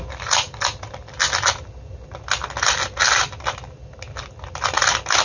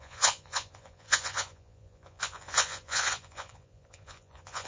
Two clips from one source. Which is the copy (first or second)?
second